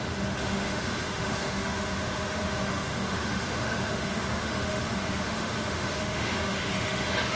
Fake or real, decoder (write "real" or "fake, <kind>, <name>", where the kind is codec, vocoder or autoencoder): fake, autoencoder, DAC-VAE